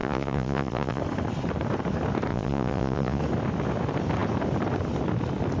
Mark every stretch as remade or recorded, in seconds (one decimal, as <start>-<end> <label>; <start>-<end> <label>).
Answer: 0.0-1.0 remade; 1.0-2.3 recorded; 2.3-3.2 remade; 3.2-5.6 recorded